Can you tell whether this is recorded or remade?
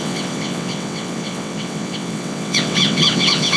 remade